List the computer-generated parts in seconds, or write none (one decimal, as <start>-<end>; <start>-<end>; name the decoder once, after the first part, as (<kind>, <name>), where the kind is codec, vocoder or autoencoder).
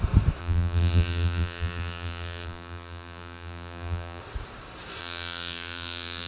0.4-4.2 (vocoder, BigVGAN v2); 5.0-6.3